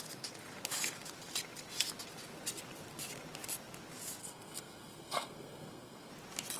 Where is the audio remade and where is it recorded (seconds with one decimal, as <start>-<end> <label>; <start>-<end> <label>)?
0.0-4.2 recorded; 4.2-6.1 remade; 6.1-6.6 recorded